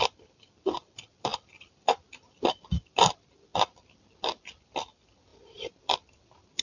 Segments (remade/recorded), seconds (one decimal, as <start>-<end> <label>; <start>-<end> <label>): 0.0-6.6 recorded